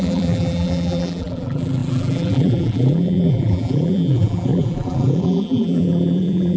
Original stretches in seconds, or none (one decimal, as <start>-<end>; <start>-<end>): none

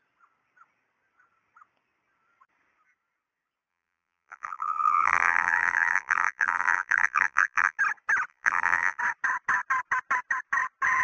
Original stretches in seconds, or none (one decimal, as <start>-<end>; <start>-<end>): 0.0-3.7; 7.8-8.3; 9.0-11.0

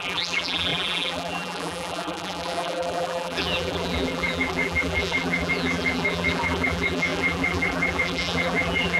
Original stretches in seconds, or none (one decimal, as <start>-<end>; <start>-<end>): none

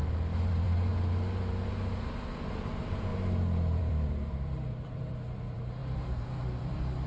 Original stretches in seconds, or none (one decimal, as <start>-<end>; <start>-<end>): 0.0-0.5; 0.9-2.5; 3.1-3.8; 5.8-6.4